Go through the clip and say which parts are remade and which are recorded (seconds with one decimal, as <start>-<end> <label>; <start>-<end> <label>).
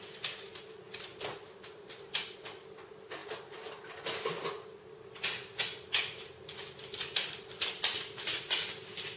0.0-1.1 recorded; 1.1-2.2 remade; 2.2-9.2 recorded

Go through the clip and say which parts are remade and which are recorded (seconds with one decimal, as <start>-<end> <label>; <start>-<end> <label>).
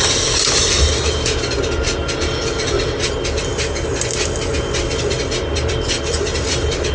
0.0-3.5 remade; 3.5-4.8 recorded; 4.8-6.9 remade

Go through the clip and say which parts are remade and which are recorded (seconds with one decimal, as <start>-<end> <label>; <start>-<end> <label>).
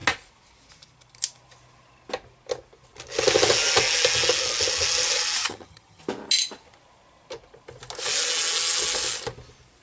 0.0-5.4 recorded; 5.4-6.0 remade; 6.0-9.8 recorded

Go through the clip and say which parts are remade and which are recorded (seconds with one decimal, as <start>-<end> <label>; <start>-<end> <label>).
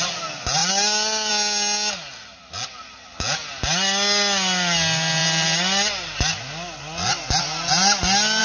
0.0-8.4 recorded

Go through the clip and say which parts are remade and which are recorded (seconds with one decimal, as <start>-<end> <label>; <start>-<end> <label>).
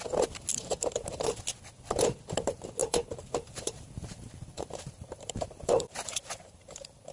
0.0-0.5 recorded; 0.5-1.3 remade; 1.3-2.8 recorded; 2.8-7.1 remade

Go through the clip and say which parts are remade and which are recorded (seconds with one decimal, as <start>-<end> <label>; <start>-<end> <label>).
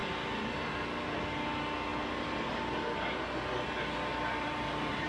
0.0-1.9 recorded; 1.9-2.5 remade; 2.5-4.1 recorded; 4.1-5.1 remade